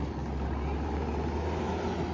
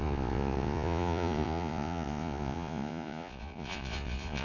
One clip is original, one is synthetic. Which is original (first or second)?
first